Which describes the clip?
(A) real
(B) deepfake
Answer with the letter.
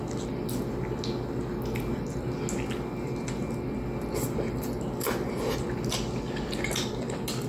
A